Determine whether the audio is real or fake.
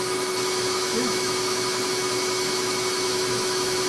fake